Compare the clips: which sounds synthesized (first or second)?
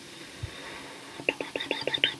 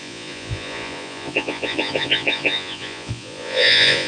second